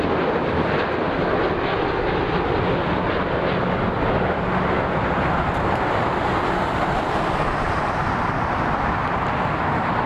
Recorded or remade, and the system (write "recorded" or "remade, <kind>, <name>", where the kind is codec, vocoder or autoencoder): recorded